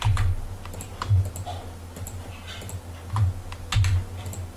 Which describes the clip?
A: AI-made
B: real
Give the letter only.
B